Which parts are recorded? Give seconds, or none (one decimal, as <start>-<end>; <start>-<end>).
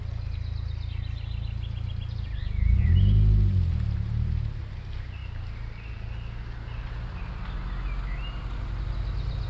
0.0-9.5